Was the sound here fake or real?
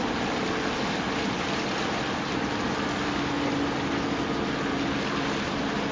real